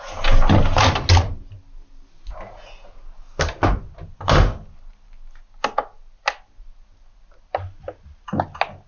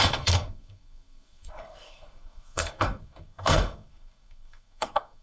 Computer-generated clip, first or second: second